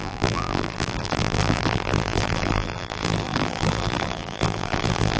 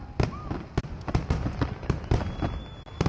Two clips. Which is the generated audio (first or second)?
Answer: first